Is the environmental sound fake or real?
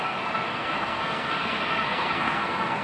fake